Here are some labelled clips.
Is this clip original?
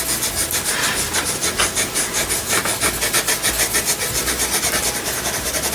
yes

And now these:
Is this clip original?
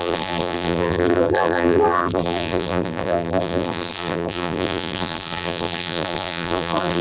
no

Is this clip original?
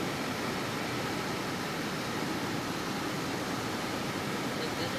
no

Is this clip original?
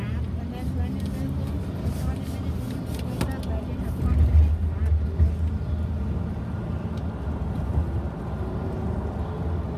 yes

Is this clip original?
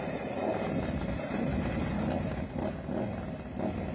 yes